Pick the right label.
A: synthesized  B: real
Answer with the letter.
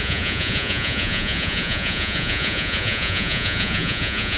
A